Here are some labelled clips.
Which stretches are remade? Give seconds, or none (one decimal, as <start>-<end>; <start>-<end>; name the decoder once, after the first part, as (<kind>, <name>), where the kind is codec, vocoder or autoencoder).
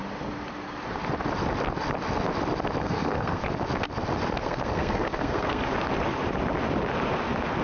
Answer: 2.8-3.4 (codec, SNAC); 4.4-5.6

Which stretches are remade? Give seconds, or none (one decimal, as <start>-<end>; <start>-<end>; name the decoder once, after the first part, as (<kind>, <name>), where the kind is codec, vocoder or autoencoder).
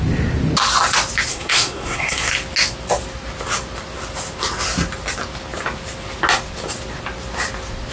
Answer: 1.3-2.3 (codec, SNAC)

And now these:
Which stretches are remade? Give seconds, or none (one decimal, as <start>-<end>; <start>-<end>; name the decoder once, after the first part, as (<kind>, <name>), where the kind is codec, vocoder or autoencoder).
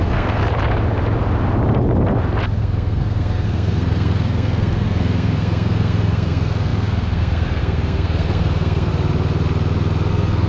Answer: 0.0-0.4 (codec, SNAC); 2.6-8.9; 10.1-10.5